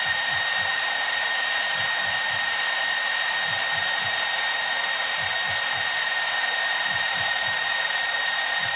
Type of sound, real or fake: fake